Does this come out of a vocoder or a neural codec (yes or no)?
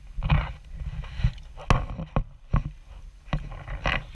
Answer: no